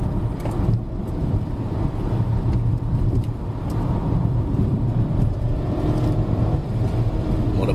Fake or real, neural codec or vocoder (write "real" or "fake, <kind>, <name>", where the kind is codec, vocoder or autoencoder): fake, vocoder, BigVGAN v2